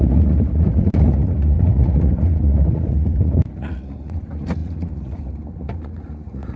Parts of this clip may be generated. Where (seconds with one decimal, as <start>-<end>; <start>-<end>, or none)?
0.0-6.6